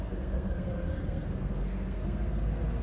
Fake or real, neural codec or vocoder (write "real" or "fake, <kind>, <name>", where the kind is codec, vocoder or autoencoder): fake, codec, SNAC